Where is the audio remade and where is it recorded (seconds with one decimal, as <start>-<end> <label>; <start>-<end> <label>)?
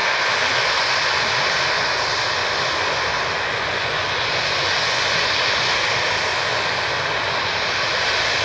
0.0-2.0 remade; 2.0-2.4 recorded; 2.4-5.7 remade; 5.7-6.3 recorded; 6.3-7.5 remade; 7.5-8.4 recorded